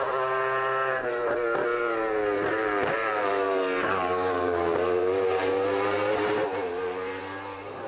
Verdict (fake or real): fake